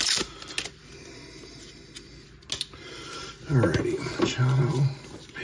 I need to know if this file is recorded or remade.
recorded